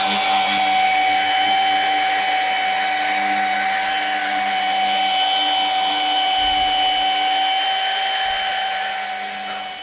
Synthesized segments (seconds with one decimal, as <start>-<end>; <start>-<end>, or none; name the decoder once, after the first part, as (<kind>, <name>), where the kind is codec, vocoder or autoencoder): none